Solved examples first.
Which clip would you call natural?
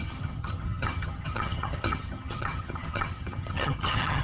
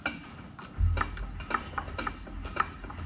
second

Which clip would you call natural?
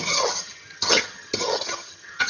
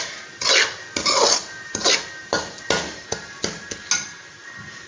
second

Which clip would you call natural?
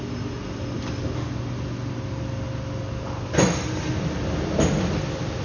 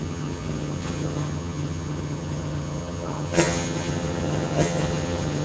first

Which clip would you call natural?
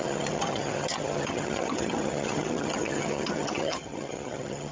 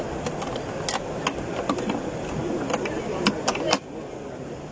second